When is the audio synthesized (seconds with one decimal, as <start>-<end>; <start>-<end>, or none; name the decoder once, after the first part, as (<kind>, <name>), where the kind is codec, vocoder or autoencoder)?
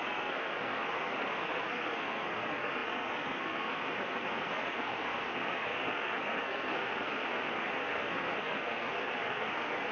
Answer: 0.0-9.9 (codec, SNAC)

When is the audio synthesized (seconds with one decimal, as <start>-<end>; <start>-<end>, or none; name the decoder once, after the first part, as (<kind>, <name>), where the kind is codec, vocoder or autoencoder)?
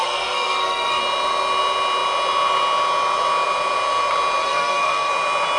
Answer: 0.0-1.0 (codec, SNAC); 4.4-5.1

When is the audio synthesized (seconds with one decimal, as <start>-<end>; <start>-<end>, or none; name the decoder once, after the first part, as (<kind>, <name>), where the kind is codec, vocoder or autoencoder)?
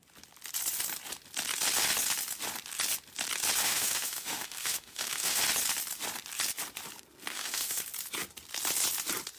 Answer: 3.6-5.4 (autoencoder, DAC-VAE); 7.3-7.8